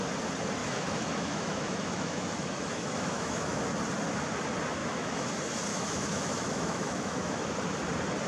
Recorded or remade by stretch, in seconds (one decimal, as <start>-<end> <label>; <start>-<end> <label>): 0.0-0.6 recorded; 0.6-3.6 remade; 3.6-4.8 recorded; 4.8-5.3 remade; 5.3-5.7 recorded; 5.7-7.5 remade; 7.5-8.3 recorded

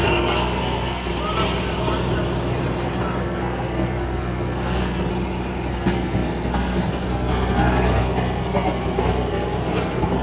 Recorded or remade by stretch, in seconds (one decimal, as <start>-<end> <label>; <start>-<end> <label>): 0.0-1.1 remade; 1.1-3.2 recorded; 3.2-5.1 remade; 5.1-5.7 recorded; 5.7-10.2 remade

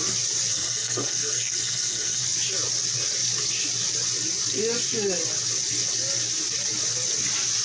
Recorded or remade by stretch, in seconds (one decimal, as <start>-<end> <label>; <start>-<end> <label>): 0.0-0.5 recorded; 0.5-2.2 remade; 2.2-7.6 recorded

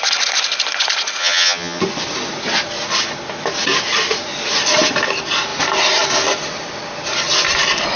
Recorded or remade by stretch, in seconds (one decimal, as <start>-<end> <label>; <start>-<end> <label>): 0.0-1.2 recorded; 1.2-1.8 remade; 1.8-8.0 recorded